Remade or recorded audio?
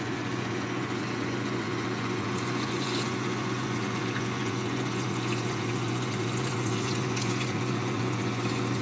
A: remade